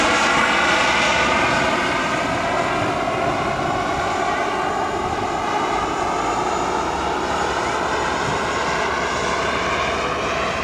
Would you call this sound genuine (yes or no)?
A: yes